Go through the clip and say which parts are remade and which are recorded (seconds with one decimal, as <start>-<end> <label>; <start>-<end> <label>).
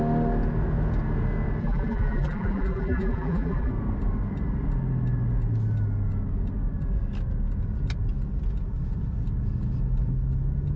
0.0-1.6 recorded; 1.6-3.7 remade; 3.7-10.8 recorded